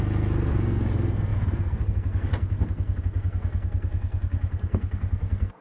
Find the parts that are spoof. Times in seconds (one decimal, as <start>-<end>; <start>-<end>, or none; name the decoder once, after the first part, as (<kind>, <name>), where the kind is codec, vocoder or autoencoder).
0.0-5.6 (codec, SNAC)